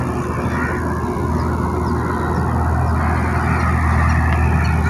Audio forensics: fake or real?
real